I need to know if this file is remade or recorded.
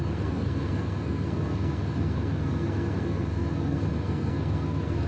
remade